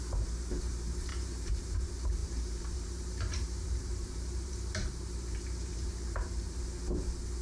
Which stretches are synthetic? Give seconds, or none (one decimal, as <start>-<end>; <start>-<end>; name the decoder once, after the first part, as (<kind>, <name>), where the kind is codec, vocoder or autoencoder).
1.1-1.8 (vocoder, BigVGAN v2); 2.2-6.6